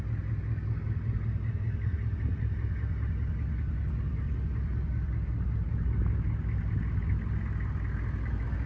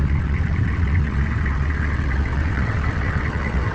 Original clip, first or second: first